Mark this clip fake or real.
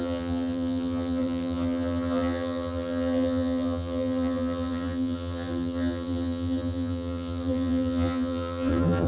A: fake